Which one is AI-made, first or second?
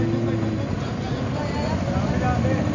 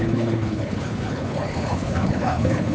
second